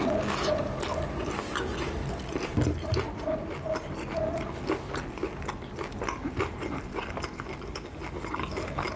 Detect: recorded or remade recorded